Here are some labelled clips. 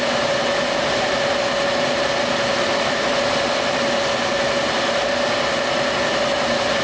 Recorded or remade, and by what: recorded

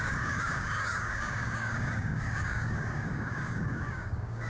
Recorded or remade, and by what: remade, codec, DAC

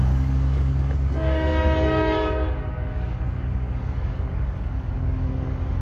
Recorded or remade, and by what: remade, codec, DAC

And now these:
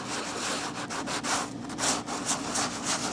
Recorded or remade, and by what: recorded